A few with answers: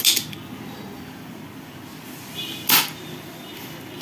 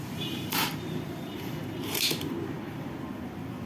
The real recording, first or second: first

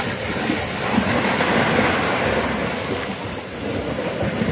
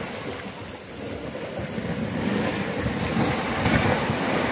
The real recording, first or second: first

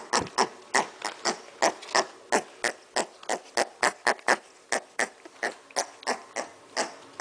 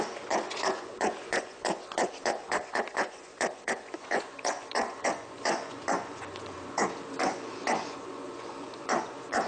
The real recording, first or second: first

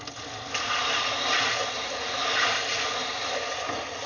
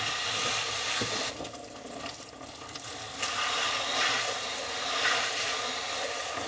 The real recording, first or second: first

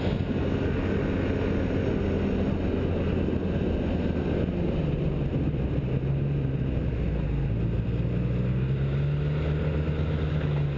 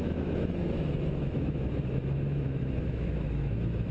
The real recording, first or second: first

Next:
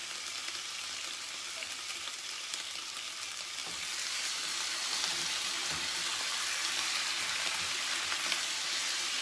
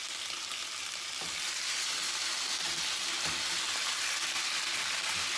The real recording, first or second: second